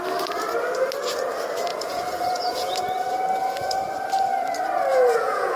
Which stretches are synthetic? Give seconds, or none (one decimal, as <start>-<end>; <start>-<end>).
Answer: 1.7-2.7; 4.9-5.6

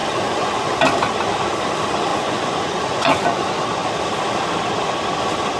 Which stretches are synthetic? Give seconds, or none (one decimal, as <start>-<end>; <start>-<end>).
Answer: 0.0-0.8; 2.1-3.9

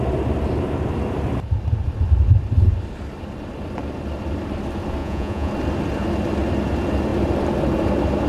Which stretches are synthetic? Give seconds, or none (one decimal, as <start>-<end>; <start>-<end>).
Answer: 5.0-5.5

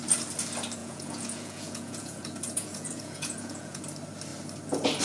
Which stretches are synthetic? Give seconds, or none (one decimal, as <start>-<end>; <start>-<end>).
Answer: 0.8-3.8